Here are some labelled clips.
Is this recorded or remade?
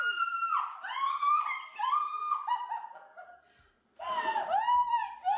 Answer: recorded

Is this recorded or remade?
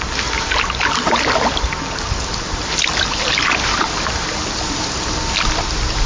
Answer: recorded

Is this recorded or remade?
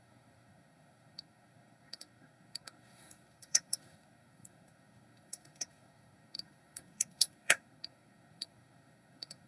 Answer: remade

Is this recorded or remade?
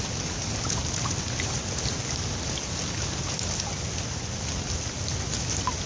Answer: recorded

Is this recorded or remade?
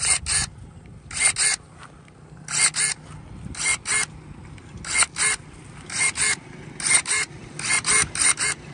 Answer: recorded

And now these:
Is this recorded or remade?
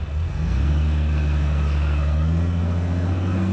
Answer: remade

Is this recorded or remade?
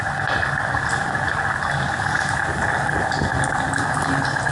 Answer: recorded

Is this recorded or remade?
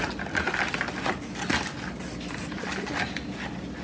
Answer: recorded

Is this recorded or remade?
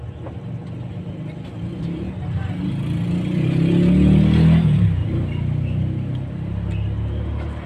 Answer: recorded